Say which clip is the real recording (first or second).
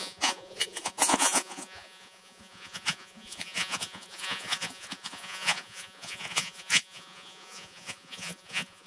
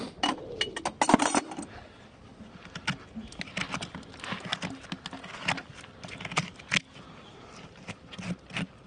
second